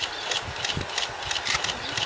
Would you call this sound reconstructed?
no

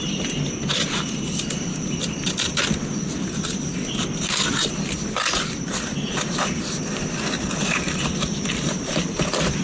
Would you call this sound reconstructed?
no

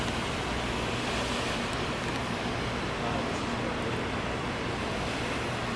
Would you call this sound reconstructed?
no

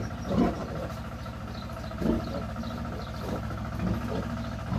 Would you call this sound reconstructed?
no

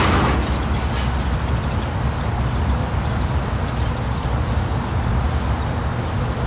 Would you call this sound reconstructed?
no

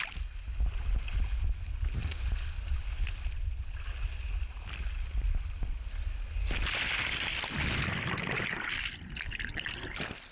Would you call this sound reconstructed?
no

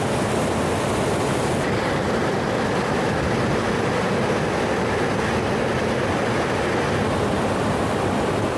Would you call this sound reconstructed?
no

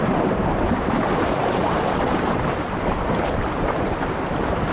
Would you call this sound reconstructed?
yes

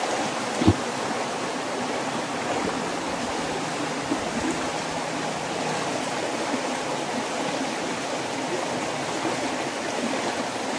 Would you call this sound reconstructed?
no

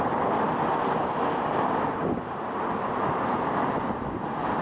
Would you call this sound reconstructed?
no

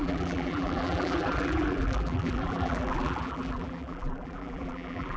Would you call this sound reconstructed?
yes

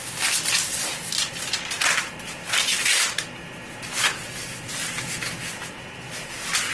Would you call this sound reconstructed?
no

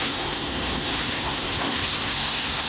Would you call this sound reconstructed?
yes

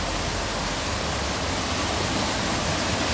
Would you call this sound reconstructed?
no